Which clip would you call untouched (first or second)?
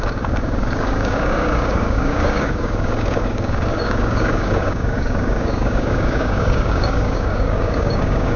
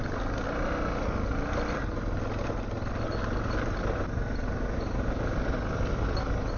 second